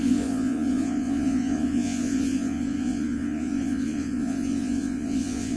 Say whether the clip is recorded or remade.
remade